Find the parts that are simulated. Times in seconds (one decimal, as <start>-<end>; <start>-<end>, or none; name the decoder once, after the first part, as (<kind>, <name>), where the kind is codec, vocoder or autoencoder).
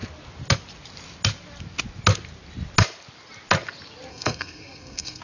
4.1-5.2 (codec, SNAC)